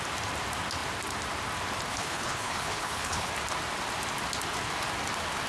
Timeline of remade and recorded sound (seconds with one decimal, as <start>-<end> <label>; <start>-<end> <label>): 0.0-1.9 recorded; 1.9-3.3 remade; 3.3-5.5 recorded